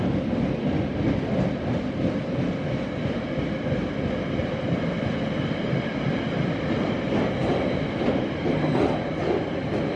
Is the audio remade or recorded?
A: recorded